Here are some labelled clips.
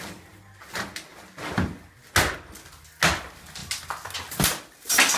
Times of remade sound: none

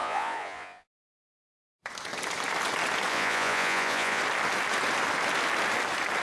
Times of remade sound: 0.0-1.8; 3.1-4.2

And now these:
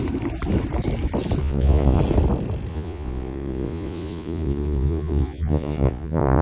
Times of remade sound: 1.4-2.0; 2.7-6.4

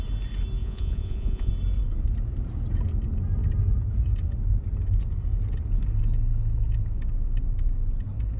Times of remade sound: 0.6-1.5